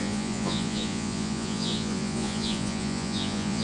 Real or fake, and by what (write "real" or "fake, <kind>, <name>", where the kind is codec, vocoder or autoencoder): fake, vocoder, Vocos